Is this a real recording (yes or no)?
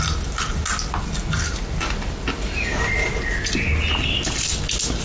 yes